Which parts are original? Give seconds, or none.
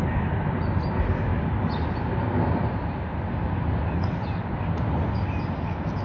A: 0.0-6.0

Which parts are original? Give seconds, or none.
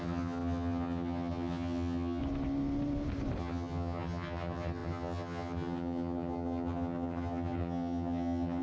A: 2.2-3.4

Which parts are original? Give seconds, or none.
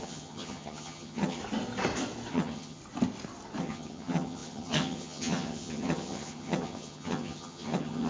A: 1.4-2.3; 2.8-3.6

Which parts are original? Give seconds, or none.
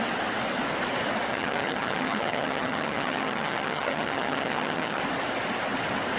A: 0.0-1.3; 5.0-6.2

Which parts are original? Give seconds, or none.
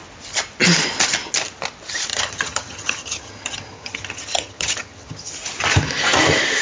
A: 0.0-2.1; 5.3-6.6